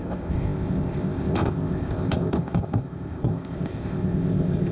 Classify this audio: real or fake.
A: fake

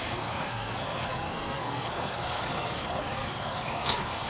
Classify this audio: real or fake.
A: fake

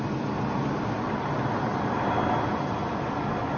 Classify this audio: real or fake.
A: real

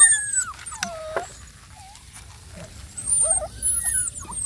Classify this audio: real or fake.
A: real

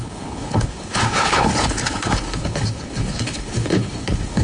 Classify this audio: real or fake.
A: fake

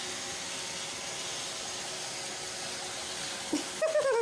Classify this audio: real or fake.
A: real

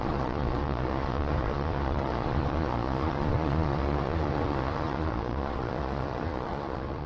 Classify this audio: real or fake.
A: fake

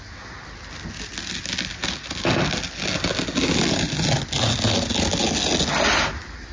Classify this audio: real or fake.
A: real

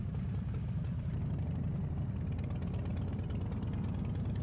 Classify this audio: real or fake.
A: real